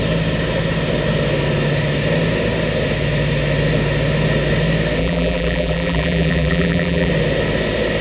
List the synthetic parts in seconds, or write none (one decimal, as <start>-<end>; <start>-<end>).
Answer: 5.0-7.1